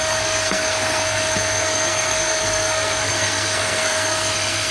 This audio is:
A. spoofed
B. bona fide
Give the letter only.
A